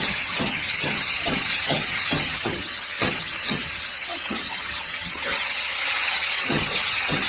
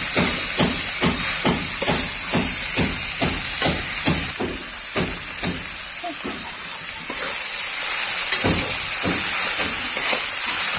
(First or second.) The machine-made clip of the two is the first